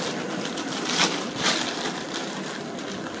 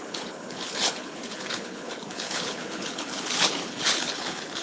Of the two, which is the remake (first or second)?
second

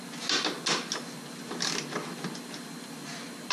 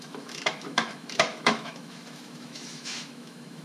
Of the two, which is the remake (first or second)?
second